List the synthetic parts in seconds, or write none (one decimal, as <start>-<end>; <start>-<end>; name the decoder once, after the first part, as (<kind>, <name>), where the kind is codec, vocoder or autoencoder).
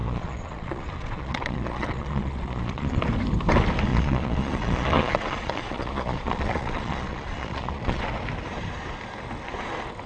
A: 0.0-3.0 (vocoder, Vocos); 3.9-8.0